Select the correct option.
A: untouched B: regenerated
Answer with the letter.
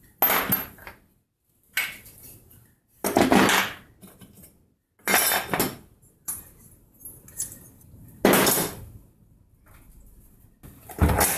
A